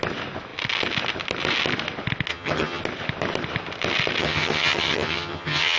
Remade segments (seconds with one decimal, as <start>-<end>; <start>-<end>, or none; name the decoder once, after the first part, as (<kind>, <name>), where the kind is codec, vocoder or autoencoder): 2.3-2.8 (vocoder, HiFi-GAN); 4.2-5.8